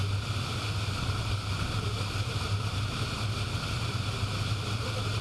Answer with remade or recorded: recorded